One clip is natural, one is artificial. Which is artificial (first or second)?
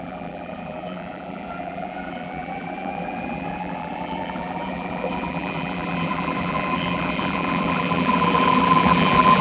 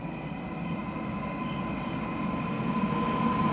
first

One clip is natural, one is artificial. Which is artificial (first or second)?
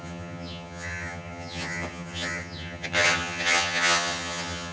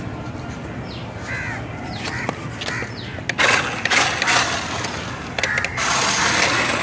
first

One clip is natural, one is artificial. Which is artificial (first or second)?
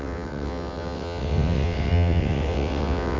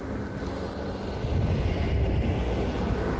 first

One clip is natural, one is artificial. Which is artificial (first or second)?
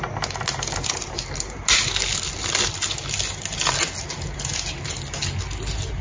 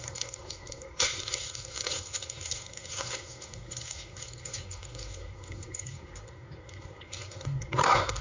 second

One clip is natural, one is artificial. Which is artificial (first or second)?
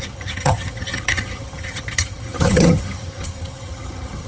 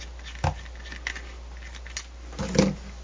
first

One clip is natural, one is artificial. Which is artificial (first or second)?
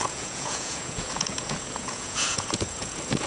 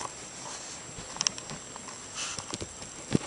first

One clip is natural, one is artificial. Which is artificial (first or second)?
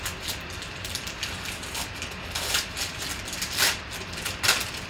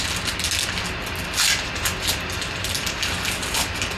first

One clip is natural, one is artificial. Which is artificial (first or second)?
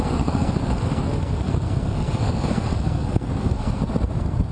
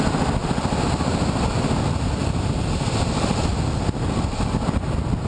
first